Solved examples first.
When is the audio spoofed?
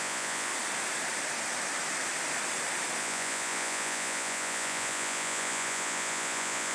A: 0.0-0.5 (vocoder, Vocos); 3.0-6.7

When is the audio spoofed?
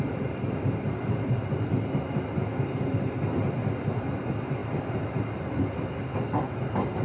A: none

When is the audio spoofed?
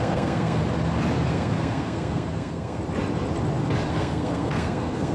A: 0.0-0.6 (codec, SNAC); 1.3-2.8; 3.9-5.1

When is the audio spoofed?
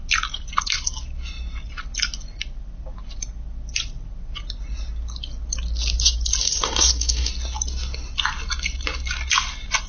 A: 6.4-7.3 (codec, DAC)